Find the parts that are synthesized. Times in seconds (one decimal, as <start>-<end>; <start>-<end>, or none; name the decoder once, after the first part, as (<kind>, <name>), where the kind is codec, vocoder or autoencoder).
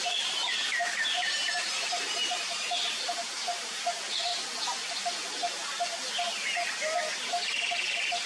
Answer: 0.0-4.3 (vocoder, BigVGAN v2); 7.3-8.3